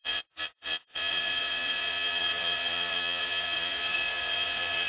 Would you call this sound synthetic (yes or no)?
yes